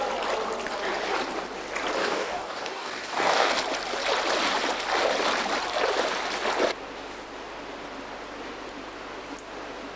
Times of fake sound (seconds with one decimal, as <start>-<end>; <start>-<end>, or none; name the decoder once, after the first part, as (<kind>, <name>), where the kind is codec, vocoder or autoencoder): 2.0-3.5 (codec, DAC)